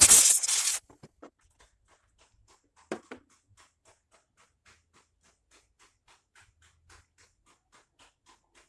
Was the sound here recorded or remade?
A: recorded